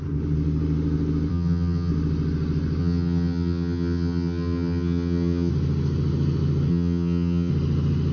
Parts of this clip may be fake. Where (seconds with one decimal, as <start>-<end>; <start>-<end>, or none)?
1.3-1.9; 2.8-5.5; 6.7-7.5